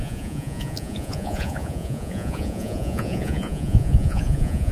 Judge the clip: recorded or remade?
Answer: remade